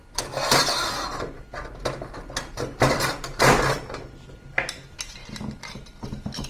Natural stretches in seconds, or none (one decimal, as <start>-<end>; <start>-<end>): 0.0-6.5